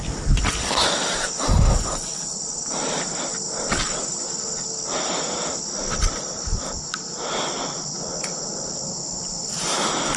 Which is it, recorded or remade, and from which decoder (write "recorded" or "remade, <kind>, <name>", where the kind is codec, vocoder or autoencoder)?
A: recorded